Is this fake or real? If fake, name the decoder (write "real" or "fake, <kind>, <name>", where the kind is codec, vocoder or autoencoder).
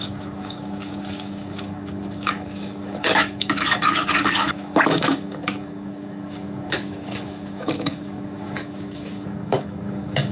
fake, codec, DAC